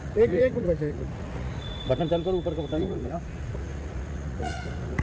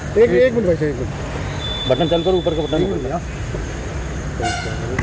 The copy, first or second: first